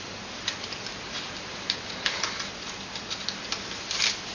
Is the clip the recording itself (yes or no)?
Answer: yes